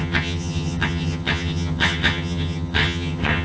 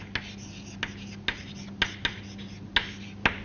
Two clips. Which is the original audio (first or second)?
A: second